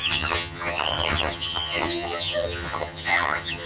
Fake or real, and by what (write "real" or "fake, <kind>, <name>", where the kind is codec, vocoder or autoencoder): fake, vocoder, HiFi-GAN